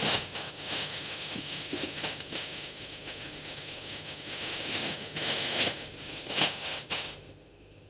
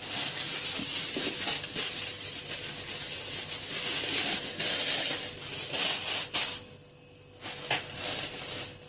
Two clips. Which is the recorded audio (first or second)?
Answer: second